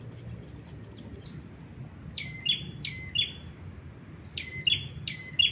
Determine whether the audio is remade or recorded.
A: recorded